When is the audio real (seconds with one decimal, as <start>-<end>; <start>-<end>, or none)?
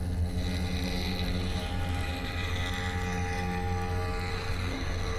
0.0-4.3